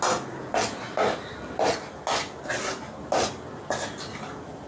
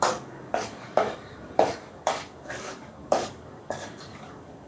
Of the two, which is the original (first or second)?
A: first